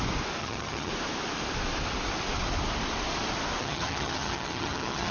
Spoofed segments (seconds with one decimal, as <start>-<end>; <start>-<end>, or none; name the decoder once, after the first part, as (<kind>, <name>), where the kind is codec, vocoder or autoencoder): 0.4-0.9 (vocoder, HiFi-GAN); 3.6-5.1